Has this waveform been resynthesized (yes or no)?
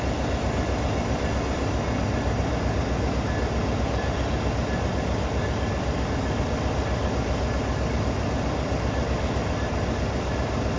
no